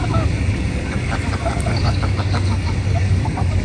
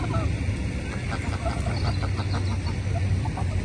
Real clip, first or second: second